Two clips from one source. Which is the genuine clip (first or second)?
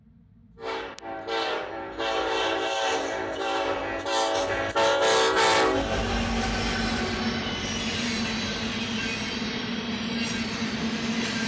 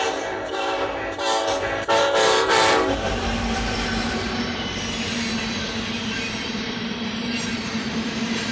first